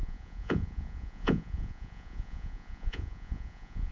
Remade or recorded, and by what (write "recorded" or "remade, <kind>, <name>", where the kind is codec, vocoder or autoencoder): remade, vocoder, Vocos